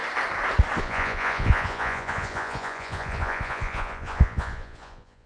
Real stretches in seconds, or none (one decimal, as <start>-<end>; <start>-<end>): 0.0-0.8